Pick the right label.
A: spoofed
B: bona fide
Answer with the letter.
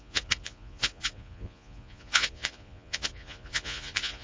A